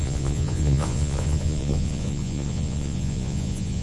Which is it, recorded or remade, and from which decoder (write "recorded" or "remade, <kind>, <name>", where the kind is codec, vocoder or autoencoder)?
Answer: remade, vocoder, Vocos